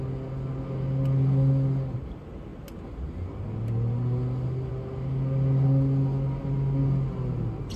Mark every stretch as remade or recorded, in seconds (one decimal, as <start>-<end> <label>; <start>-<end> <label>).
0.0-7.8 recorded